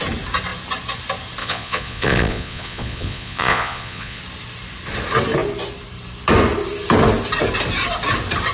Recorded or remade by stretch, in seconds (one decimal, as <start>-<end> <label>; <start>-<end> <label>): 0.0-1.4 recorded; 1.4-4.2 remade; 4.2-8.5 recorded